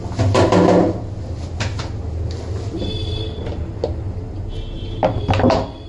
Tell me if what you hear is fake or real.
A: real